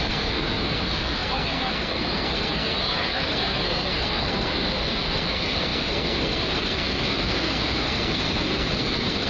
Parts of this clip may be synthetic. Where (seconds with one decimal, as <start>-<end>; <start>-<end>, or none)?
0.0-9.3